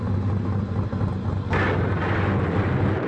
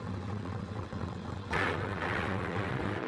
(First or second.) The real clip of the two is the first